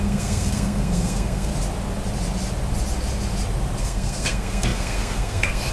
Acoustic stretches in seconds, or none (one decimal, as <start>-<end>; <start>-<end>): 1.5-3.8